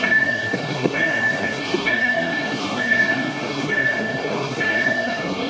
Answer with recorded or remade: remade